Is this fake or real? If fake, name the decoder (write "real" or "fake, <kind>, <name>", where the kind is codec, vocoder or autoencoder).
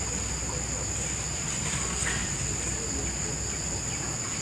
real